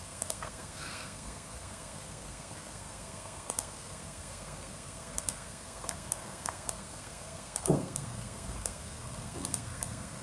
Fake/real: fake